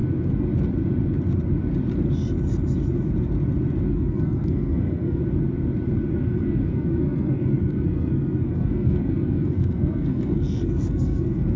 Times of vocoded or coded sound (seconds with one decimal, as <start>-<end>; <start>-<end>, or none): 3.9-5.2; 6.1-11.6